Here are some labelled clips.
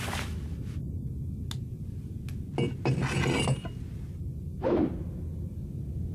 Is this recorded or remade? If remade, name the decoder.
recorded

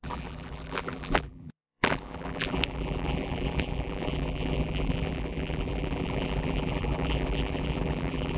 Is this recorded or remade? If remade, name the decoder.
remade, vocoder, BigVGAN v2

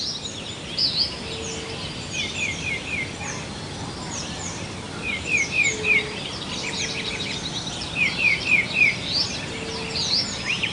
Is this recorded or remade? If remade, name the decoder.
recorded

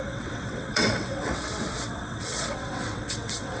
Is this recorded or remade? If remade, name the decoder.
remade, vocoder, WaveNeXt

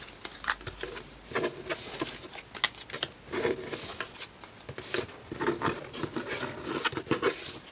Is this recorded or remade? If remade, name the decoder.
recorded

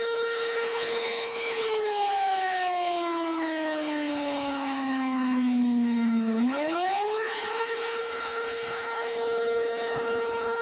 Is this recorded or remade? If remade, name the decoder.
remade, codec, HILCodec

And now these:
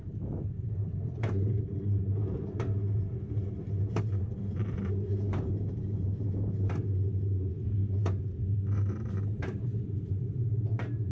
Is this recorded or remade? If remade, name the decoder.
remade, vocoder, BigVGAN v2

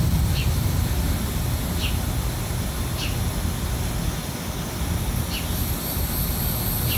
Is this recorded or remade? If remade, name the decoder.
recorded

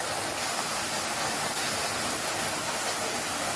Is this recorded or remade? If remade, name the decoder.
recorded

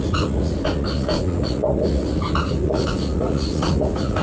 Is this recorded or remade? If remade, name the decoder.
remade, vocoder, Vocos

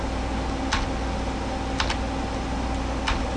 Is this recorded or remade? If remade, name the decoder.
recorded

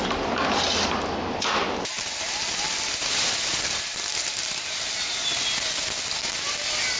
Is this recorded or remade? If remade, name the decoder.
recorded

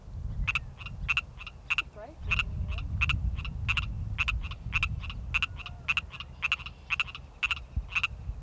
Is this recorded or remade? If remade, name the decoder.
recorded